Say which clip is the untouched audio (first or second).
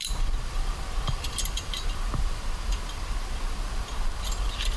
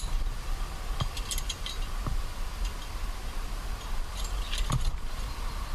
second